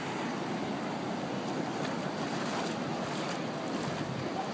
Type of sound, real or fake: real